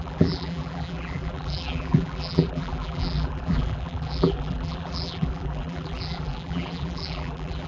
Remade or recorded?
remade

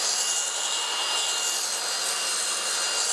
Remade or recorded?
recorded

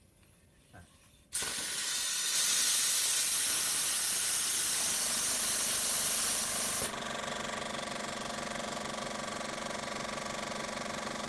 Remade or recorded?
recorded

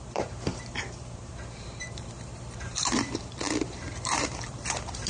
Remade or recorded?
remade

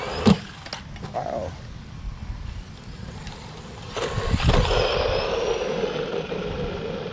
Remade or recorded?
recorded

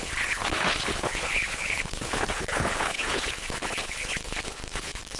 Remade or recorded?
remade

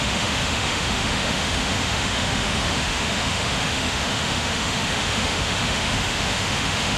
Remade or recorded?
remade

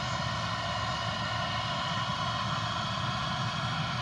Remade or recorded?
recorded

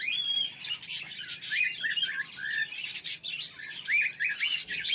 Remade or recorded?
recorded